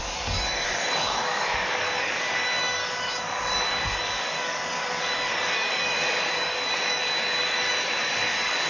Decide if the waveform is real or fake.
fake